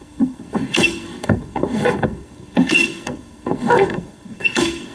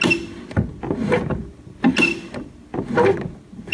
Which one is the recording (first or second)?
second